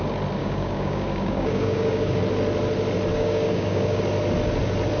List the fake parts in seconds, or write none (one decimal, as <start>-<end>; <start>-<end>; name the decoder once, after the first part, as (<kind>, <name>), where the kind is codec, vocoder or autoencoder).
0.4-2.2 (codec, DAC); 3.1-4.0